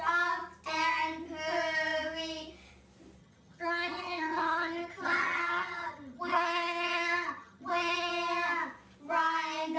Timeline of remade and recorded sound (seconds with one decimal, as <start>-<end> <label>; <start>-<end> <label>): 0.0-3.2 recorded; 3.2-8.1 remade; 8.1-9.8 recorded